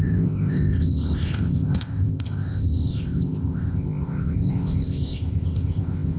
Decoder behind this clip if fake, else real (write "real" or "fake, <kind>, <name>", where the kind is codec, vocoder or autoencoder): fake, codec, ZipCodec